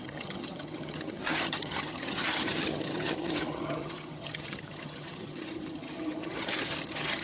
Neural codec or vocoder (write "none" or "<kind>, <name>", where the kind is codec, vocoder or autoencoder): vocoder, HiFi-GAN